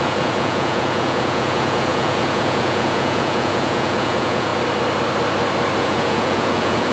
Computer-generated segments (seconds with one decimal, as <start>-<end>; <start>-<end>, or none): 0.0-4.5; 5.8-6.9